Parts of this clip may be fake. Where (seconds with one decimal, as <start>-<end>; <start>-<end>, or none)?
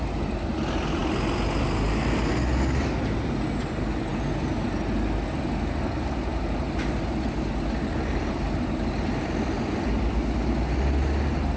none